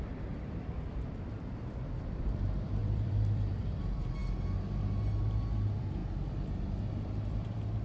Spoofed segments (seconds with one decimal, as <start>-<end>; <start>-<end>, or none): 0.0-4.2; 5.2-6.0; 6.8-7.8